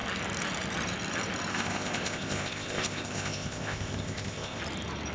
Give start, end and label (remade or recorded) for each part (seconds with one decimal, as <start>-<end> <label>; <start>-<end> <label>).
0.0-1.5 recorded; 1.5-4.6 remade; 4.6-5.1 recorded